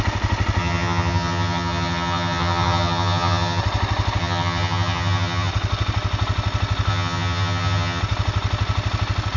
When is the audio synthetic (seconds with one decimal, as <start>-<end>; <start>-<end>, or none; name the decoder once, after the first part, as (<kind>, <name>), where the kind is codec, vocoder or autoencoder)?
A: 0.6-3.6 (vocoder, HiFi-GAN); 4.2-5.5; 6.9-8.0